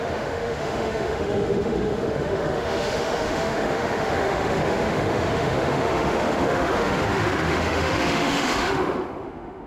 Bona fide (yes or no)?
no